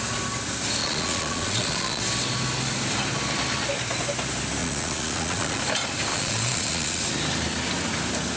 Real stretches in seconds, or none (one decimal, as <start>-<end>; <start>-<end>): 0.0-0.8; 2.0-4.6; 5.6-6.1; 7.0-8.4